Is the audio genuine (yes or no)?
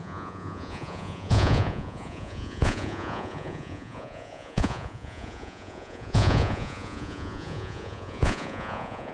no